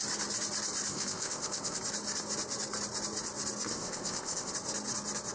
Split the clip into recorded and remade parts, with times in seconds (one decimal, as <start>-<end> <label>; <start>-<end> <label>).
0.0-0.9 recorded; 0.9-1.8 remade; 1.8-3.7 recorded; 3.7-4.5 remade; 4.5-5.3 recorded